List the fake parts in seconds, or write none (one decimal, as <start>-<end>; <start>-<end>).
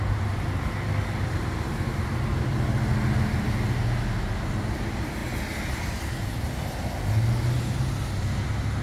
none